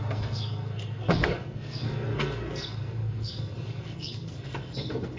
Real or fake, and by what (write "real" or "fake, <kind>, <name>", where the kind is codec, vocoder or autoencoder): fake, codec, SNAC